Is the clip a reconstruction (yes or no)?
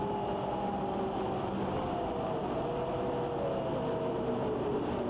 no